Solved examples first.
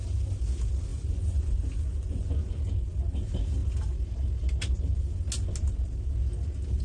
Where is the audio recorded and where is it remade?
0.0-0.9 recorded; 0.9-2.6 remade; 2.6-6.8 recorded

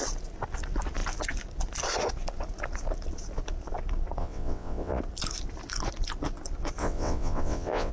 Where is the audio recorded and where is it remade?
0.0-4.2 recorded; 4.2-5.0 remade; 5.0-6.8 recorded; 6.8-7.9 remade

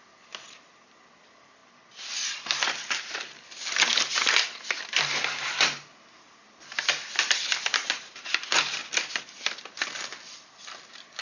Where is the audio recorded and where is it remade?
0.0-1.6 remade; 1.6-4.8 recorded; 4.8-8.8 remade; 8.8-11.2 recorded

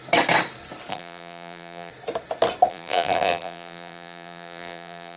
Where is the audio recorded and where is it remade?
0.0-0.9 recorded; 0.9-1.9 remade; 1.9-2.7 recorded; 2.7-5.2 remade

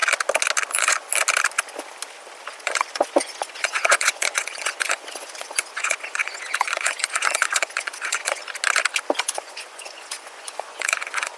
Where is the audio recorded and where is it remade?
0.0-0.7 recorded; 0.7-1.1 remade; 1.1-2.6 recorded; 2.6-8.4 remade; 8.4-9.2 recorded; 9.2-11.4 remade

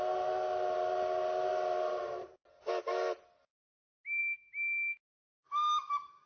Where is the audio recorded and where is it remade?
0.0-6.3 recorded

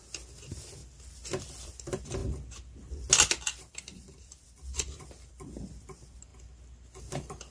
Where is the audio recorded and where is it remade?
0.0-0.8 remade; 0.8-1.4 recorded; 1.4-2.2 remade; 2.2-3.3 recorded; 3.3-6.3 remade; 6.3-7.0 recorded; 7.0-7.5 remade

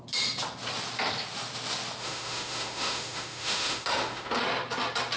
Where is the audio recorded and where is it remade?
0.0-2.0 recorded; 2.0-4.4 remade; 4.4-5.2 recorded